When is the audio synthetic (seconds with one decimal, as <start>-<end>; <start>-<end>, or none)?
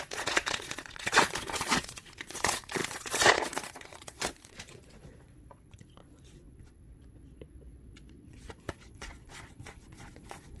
0.0-10.6